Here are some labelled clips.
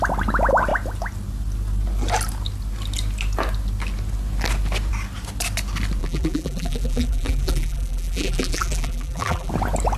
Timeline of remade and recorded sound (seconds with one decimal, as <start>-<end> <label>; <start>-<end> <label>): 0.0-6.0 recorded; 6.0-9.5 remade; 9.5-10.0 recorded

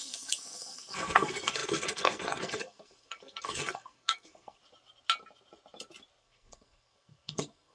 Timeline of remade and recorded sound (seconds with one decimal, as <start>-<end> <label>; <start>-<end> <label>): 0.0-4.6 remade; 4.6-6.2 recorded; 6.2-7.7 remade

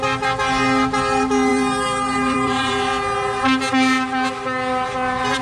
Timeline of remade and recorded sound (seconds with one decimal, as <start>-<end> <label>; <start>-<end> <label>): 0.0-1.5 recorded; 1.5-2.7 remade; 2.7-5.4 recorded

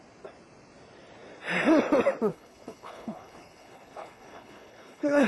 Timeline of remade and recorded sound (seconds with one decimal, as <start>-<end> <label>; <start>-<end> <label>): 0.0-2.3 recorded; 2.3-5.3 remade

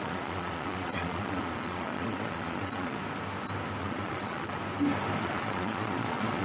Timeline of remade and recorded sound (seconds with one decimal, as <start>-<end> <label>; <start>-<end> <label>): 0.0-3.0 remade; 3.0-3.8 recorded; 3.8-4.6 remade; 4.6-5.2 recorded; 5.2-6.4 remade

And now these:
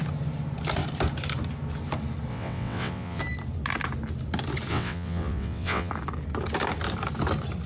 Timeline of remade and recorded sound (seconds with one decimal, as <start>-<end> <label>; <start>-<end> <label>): 0.0-2.3 recorded; 2.3-3.2 remade; 3.2-4.7 recorded; 4.7-5.9 remade; 5.9-7.7 recorded

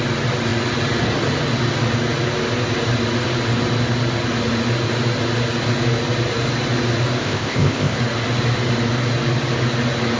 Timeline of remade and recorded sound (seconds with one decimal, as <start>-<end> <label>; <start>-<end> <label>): 0.0-7.2 recorded; 7.2-8.0 remade; 8.0-10.2 recorded

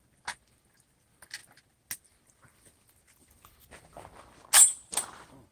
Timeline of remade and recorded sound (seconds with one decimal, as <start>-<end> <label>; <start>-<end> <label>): 0.0-5.5 recorded